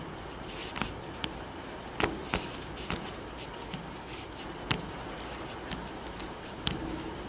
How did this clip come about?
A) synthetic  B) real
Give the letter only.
B